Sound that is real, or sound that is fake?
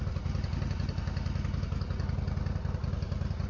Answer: real